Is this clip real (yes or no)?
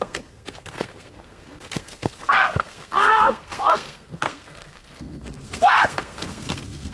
no